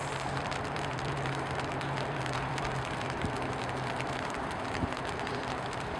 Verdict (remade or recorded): remade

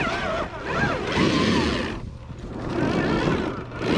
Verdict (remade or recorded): recorded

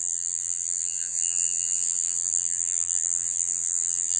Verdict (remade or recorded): remade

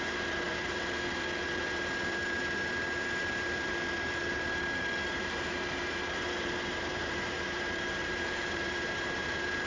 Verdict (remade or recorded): remade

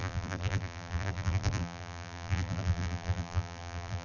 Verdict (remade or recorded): remade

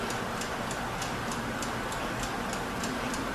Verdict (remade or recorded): remade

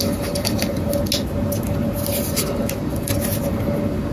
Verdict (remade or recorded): recorded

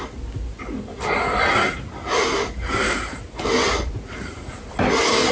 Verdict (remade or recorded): recorded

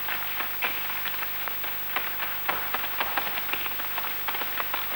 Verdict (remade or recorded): recorded